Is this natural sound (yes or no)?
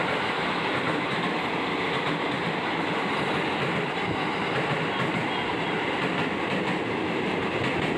yes